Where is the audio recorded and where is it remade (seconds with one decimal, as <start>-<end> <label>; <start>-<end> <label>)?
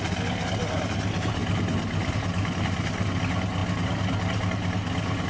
0.0-5.3 recorded